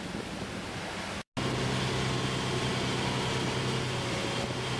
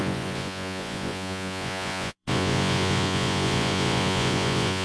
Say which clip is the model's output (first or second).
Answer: second